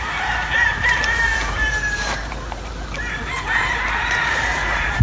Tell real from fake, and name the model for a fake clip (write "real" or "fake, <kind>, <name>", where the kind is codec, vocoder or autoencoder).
fake, vocoder, BigVGAN v2